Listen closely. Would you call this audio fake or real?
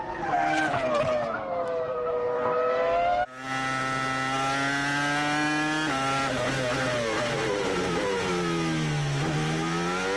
real